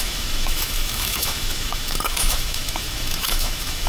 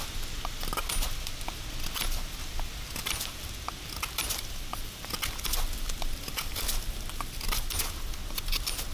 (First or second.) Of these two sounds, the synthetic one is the first